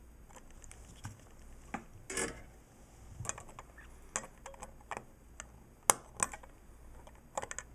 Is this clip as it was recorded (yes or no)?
yes